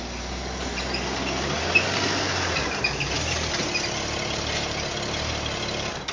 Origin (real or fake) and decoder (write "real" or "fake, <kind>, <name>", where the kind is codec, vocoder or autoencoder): real